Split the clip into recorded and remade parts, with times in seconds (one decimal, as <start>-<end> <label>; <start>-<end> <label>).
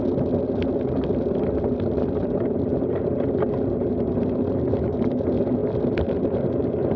0.0-5.6 recorded; 5.6-6.1 remade; 6.1-7.0 recorded